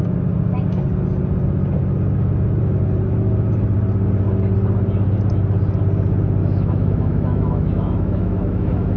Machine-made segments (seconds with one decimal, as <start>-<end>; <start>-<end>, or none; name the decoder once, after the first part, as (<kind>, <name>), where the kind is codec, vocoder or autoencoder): 6.4-9.0 (autoencoder, DAC-VAE)